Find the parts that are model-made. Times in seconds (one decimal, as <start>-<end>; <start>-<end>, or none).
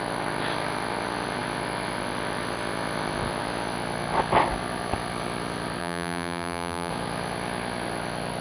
5.8-6.9